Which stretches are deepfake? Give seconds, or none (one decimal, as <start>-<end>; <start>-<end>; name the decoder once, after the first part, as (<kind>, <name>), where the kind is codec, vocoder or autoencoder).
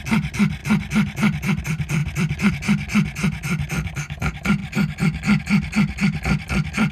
none